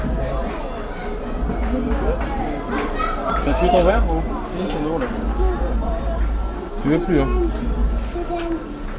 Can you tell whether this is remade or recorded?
recorded